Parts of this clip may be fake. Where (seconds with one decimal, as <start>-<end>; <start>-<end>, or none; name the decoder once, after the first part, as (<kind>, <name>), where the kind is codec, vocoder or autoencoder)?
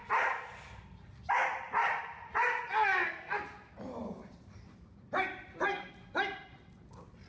none